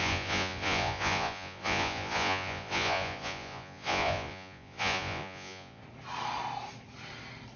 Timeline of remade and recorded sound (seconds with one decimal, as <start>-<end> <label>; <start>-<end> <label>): 0.0-5.8 remade; 5.8-7.6 recorded